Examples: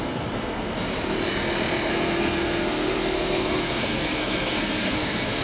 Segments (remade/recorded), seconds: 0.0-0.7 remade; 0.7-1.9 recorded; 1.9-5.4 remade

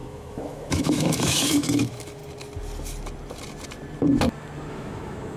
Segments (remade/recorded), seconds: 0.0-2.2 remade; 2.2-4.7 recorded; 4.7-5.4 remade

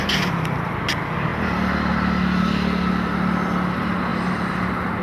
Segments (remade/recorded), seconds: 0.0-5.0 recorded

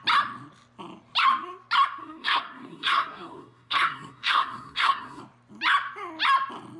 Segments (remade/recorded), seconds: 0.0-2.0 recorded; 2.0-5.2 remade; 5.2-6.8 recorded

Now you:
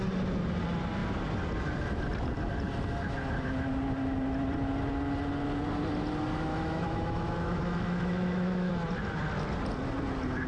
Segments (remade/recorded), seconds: 0.0-6.5 recorded; 6.5-8.7 remade; 8.7-10.5 recorded

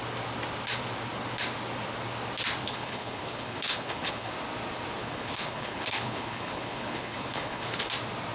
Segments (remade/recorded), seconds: 0.0-2.6 recorded; 2.6-4.3 remade; 4.3-5.0 recorded; 5.0-7.9 remade; 7.9-8.3 recorded

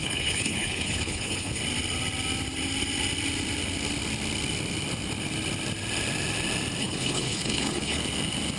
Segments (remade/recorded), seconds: 0.0-1.6 remade; 1.6-6.8 recorded; 6.8-8.0 remade; 8.0-8.6 recorded

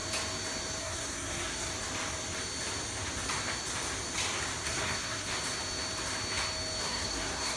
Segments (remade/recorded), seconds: 0.0-0.8 recorded; 0.8-1.7 remade; 1.7-4.6 recorded; 4.6-5.3 remade; 5.3-6.8 recorded; 6.8-7.6 remade